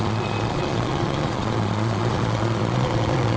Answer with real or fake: fake